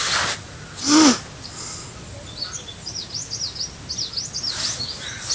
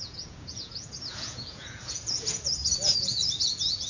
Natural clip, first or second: first